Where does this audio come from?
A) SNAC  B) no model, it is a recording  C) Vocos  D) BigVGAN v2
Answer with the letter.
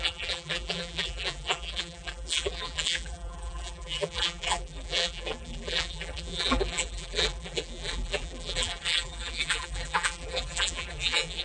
D